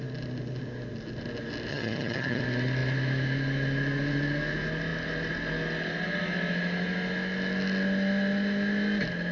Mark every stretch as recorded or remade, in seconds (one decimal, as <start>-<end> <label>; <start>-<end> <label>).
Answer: 0.0-1.7 recorded; 1.7-2.4 remade; 2.4-9.3 recorded